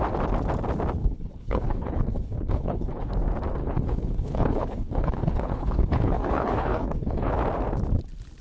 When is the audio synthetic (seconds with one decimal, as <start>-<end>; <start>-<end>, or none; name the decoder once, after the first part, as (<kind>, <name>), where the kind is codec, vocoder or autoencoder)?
1.0-3.1 (codec, HILCodec); 3.6-7.3